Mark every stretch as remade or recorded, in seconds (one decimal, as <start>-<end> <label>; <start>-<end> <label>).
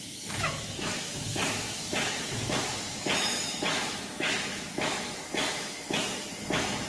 0.0-6.9 remade